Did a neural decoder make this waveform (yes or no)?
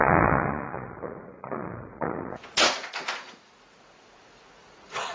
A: yes